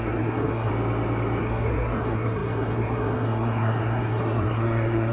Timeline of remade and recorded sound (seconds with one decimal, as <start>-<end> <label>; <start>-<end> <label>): 0.0-0.7 remade; 0.7-1.4 recorded; 1.4-5.1 remade